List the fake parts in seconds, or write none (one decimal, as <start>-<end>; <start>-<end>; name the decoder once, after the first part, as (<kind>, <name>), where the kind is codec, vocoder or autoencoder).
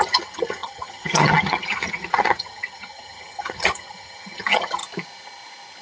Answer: 0.0-4.8 (vocoder, HiFi-GAN)